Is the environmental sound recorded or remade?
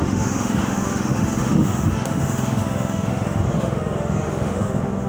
remade